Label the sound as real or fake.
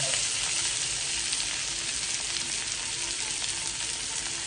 real